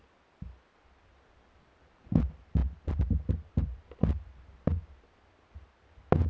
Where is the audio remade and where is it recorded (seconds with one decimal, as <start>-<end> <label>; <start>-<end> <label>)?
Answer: 0.0-1.1 recorded; 1.1-2.2 remade; 2.2-2.6 recorded; 2.6-3.8 remade; 3.8-6.3 recorded